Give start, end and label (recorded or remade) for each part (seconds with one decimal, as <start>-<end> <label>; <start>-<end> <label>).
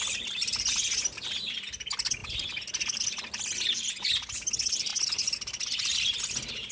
0.0-6.7 recorded